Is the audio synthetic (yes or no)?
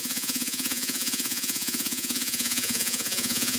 yes